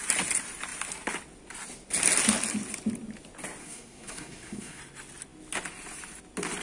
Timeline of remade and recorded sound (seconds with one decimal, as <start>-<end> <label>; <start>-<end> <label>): 0.0-3.6 recorded; 3.6-4.8 remade; 4.8-6.6 recorded